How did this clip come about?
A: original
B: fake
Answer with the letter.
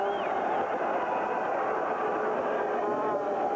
A